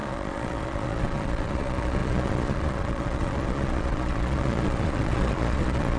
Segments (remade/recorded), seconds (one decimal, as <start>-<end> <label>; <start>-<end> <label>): 0.0-6.0 remade